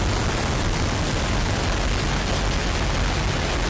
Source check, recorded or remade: recorded